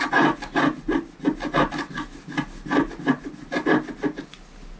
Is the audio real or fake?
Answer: real